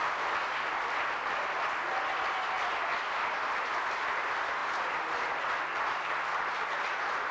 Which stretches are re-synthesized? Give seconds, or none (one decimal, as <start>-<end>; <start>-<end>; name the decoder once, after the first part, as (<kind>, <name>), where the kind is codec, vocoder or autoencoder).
none